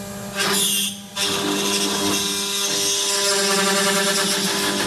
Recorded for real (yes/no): yes